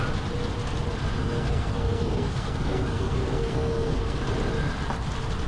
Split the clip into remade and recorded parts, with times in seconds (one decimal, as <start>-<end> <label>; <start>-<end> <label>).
0.0-1.2 recorded; 1.2-4.2 remade; 4.2-5.5 recorded